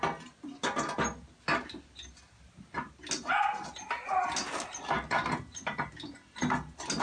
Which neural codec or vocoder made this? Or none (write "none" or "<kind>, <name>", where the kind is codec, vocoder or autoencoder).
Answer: none